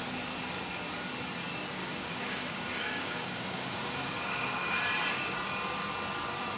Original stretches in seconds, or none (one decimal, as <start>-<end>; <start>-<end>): 0.0-1.8; 4.8-6.6